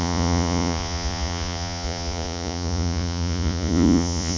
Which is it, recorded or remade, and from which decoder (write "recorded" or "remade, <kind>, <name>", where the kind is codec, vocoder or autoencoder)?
remade, vocoder, Vocos